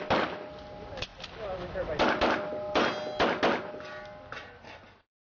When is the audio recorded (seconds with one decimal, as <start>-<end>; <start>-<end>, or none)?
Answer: 0.0-5.3